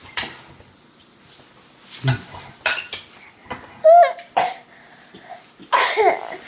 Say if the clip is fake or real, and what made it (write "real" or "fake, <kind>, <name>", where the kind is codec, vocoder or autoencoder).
real